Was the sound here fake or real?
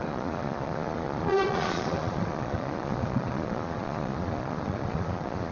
fake